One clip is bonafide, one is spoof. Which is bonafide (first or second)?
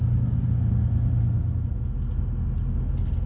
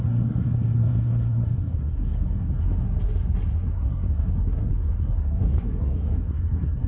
first